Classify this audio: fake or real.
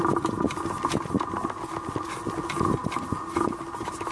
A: real